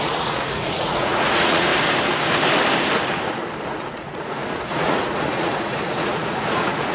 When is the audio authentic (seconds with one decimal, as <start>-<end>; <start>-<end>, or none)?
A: 1.7-3.7